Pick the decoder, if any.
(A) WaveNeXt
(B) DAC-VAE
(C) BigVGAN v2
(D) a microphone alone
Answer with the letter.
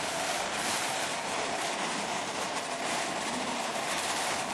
C